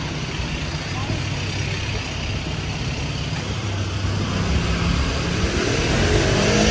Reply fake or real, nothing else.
real